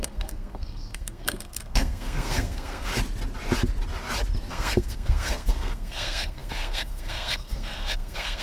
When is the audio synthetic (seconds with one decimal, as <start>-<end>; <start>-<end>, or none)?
0.0-2.9; 4.5-8.4